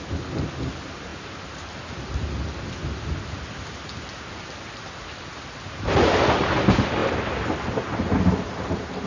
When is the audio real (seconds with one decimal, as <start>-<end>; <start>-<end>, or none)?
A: 0.0-9.1